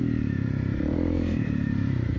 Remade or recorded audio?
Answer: remade